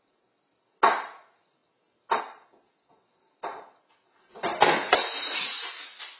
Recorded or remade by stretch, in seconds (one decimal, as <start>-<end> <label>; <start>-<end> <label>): 0.0-6.2 recorded